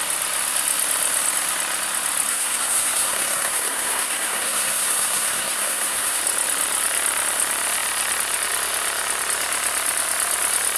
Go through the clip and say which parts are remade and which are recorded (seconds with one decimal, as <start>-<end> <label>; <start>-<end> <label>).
0.0-2.3 recorded; 2.3-6.2 remade; 6.2-10.8 recorded